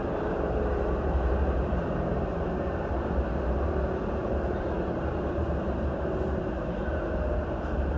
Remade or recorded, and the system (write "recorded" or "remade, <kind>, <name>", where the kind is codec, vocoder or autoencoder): remade, vocoder, BigVGAN v2